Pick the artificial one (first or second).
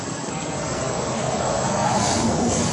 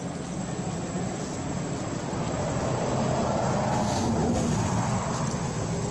first